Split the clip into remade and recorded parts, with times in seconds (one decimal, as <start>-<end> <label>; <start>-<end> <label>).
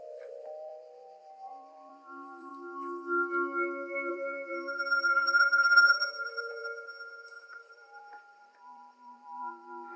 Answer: 0.0-2.5 remade; 2.5-4.1 recorded; 4.1-6.6 remade; 6.6-7.6 recorded; 7.6-10.0 remade